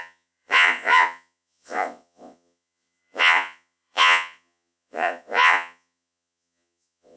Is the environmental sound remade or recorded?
remade